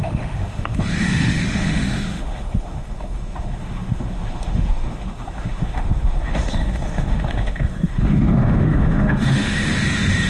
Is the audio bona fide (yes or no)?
no